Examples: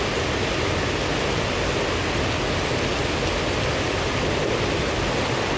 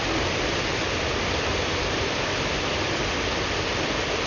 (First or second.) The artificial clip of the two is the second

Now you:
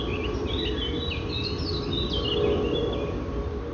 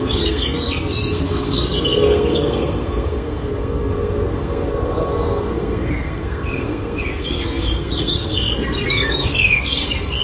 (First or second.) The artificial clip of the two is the second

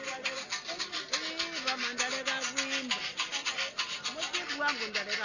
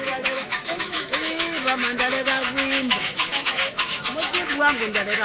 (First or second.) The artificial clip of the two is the second